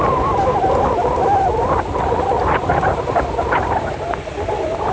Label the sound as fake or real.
real